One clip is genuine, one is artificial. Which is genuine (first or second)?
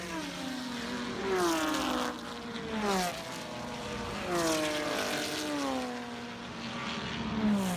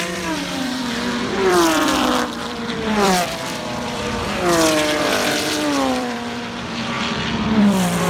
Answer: first